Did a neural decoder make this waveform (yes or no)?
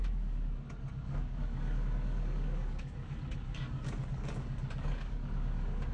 yes